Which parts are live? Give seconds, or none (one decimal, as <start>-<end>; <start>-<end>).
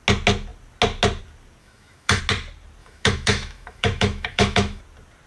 0.0-1.6; 2.2-2.8; 4.8-5.3